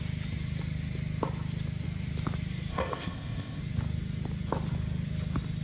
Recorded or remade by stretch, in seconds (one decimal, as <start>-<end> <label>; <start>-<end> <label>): 0.0-2.7 recorded; 2.7-3.6 remade; 3.6-5.6 recorded

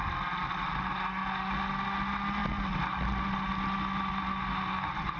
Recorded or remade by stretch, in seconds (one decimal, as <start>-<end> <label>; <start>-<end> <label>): 0.0-5.2 recorded